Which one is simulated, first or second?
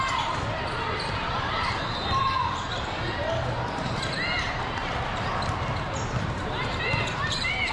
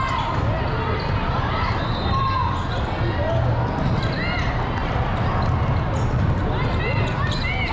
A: first